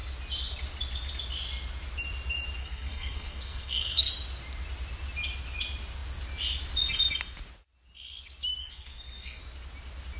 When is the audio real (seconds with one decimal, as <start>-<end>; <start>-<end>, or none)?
0.0-2.6; 4.1-8.6; 9.4-10.2